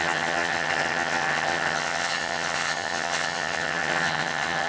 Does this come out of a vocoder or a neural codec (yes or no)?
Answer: yes